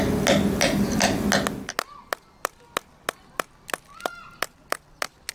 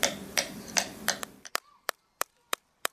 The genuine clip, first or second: first